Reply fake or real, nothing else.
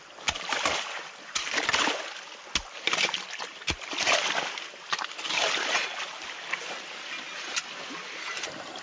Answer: real